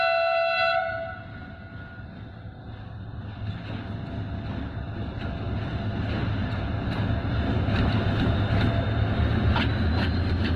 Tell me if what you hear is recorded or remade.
recorded